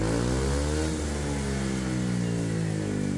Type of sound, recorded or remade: recorded